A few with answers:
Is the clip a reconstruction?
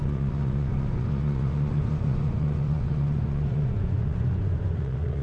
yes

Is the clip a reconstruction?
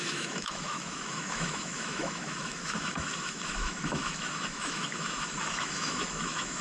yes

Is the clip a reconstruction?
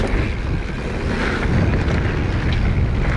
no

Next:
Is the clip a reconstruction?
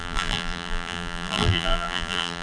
yes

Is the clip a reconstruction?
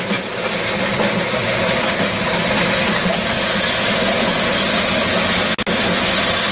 no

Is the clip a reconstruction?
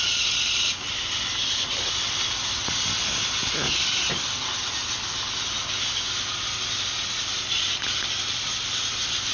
no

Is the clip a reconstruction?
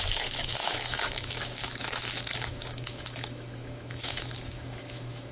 yes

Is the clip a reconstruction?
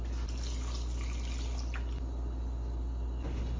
no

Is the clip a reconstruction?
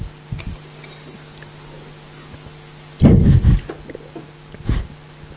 no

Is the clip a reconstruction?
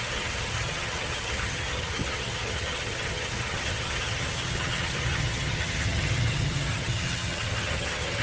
yes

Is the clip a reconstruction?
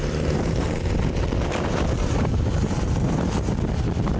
yes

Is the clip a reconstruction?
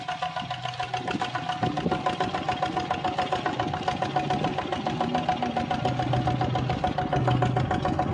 no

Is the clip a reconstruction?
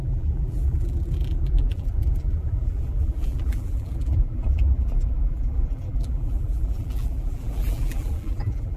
yes